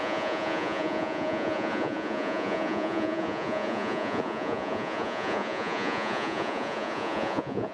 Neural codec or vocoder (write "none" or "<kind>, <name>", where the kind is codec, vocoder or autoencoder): vocoder, Vocos